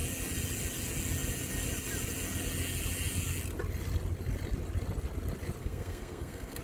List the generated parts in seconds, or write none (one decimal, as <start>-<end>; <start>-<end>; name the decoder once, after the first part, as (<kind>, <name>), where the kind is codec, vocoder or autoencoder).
5.6-6.6 (codec, SNAC)